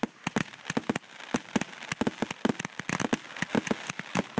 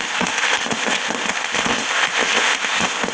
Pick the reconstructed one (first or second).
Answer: second